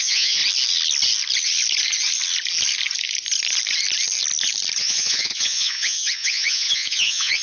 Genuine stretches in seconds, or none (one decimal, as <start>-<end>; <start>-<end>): 0.4-4.8

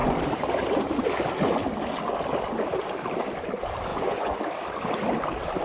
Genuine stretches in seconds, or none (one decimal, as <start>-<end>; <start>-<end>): 0.0-3.9; 4.4-5.6

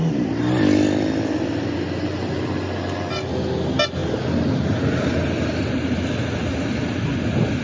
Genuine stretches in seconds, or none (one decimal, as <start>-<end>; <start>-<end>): 0.0-7.6